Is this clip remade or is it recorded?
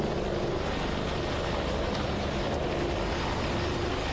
recorded